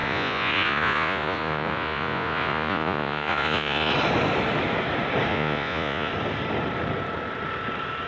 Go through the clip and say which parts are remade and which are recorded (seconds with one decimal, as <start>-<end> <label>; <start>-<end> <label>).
0.0-3.9 remade; 3.9-5.3 recorded; 5.3-6.1 remade; 6.1-8.1 recorded

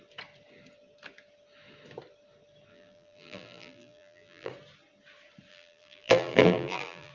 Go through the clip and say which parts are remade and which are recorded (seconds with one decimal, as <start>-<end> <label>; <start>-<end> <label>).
0.0-2.7 recorded; 2.7-4.5 remade; 4.5-5.5 recorded; 5.5-7.1 remade